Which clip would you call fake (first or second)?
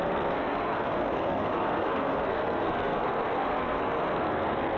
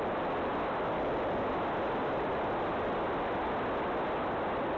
first